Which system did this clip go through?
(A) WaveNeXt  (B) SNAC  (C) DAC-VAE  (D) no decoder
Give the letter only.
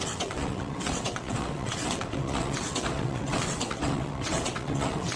A